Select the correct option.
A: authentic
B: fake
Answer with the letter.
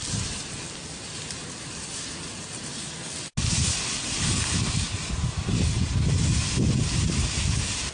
A